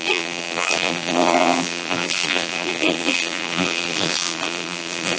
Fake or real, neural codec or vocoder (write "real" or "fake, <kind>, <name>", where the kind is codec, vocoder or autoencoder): fake, vocoder, BigVGAN v2